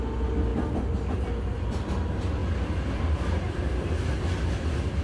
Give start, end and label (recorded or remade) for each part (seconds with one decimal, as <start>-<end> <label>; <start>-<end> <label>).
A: 0.0-0.5 remade; 0.5-1.2 recorded; 1.2-5.0 remade